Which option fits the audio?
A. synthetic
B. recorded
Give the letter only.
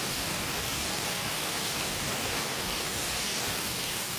A